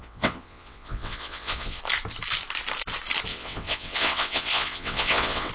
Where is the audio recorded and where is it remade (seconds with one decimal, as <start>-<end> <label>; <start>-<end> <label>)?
0.0-1.8 remade; 1.8-3.3 recorded; 3.3-5.5 remade